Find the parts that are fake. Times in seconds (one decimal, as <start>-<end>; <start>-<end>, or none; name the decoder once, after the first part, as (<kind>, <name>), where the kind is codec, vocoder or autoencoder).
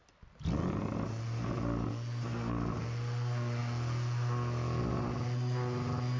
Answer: none